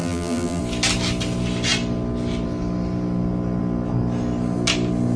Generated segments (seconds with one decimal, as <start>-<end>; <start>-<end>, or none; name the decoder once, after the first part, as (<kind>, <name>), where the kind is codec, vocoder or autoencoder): 0.0-0.6 (vocoder, BigVGAN v2)